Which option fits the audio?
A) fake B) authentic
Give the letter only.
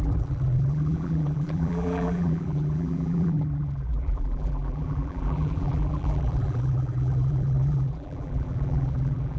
A